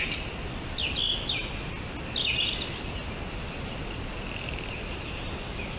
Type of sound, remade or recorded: recorded